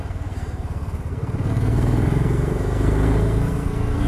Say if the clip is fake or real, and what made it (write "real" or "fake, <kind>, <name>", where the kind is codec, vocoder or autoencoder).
fake, codec, SNAC